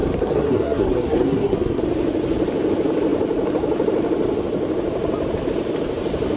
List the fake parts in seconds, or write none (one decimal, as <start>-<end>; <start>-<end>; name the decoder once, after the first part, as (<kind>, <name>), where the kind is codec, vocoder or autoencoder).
0.0-1.8 (codec, SNAC)